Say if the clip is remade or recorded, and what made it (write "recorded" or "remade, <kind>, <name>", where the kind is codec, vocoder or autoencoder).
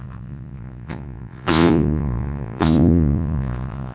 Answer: remade, vocoder, Vocos